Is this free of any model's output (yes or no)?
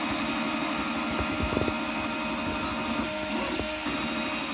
yes